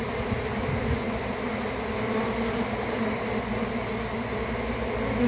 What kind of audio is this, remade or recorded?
recorded